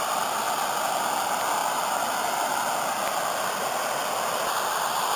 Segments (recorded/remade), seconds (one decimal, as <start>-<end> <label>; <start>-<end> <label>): 0.0-5.2 recorded